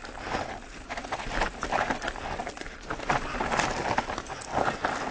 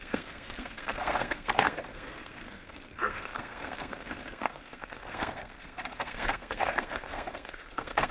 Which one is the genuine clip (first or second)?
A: first